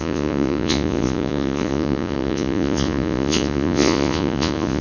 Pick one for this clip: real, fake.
fake